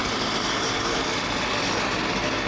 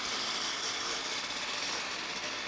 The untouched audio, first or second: first